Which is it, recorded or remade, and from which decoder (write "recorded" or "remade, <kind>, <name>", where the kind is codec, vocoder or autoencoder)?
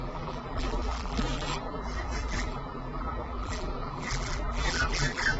remade, vocoder, BigVGAN v2